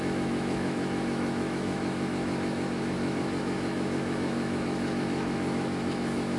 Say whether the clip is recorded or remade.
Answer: remade